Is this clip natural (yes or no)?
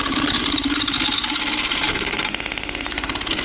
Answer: yes